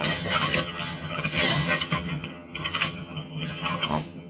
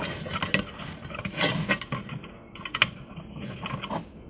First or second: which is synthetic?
first